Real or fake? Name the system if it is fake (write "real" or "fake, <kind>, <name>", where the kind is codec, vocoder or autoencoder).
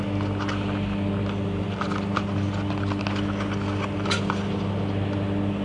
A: real